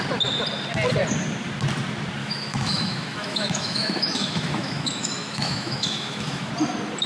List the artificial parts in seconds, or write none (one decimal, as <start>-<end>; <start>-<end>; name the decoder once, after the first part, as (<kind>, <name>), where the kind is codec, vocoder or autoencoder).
2.2-6.5 (autoencoder, DAC-VAE)